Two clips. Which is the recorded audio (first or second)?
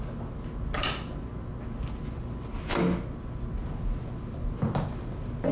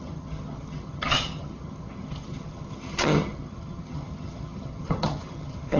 first